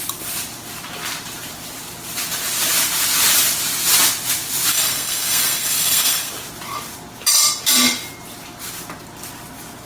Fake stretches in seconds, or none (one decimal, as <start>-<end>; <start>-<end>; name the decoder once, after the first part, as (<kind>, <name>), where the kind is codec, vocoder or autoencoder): 4.7-6.3 (codec, SNAC)